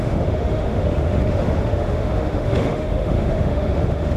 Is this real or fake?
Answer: fake